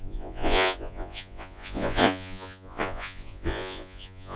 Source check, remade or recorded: remade